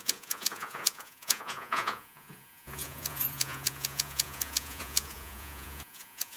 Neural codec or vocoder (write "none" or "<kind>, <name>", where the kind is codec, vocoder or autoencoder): vocoder, Vocos